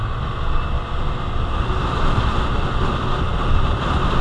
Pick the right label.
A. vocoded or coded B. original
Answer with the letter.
B